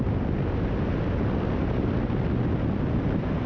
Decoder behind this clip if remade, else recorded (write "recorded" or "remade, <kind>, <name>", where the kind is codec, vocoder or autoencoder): recorded